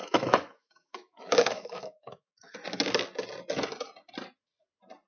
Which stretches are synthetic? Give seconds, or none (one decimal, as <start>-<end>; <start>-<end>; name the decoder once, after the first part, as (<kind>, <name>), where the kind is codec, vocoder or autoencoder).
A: 0.0-2.5 (autoencoder, DAC-VAE)